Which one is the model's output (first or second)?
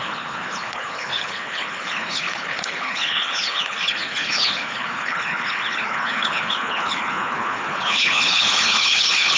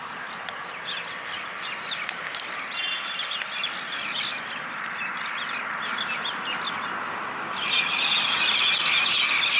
first